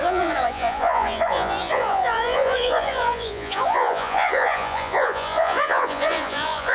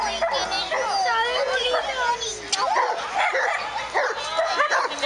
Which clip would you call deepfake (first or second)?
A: first